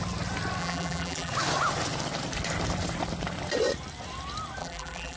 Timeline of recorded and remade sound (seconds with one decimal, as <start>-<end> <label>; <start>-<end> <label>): 0.0-0.6 recorded; 0.6-1.3 remade; 1.3-4.6 recorded; 4.6-5.2 remade